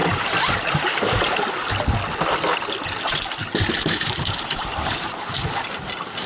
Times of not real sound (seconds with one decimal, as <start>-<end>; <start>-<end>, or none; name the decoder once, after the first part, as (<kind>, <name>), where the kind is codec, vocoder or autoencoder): 0.0-1.7 (vocoder, BigVGAN v2); 3.4-5.5